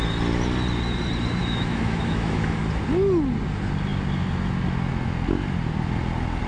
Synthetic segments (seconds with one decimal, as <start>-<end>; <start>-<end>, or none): 1.4-2.6